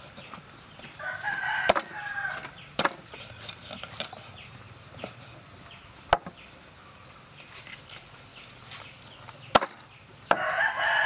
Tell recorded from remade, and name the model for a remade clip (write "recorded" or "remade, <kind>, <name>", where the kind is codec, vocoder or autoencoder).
recorded